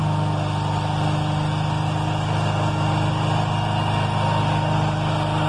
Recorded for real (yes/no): yes